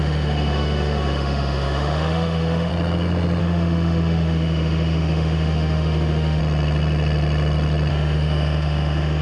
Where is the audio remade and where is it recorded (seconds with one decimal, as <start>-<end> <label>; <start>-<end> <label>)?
0.0-2.7 remade; 2.7-3.4 recorded; 3.4-6.4 remade; 6.4-7.9 recorded; 7.9-9.2 remade